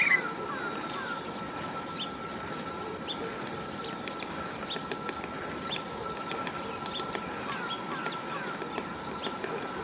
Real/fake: real